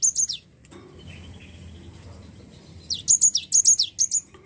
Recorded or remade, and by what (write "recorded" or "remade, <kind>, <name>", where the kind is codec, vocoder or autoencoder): recorded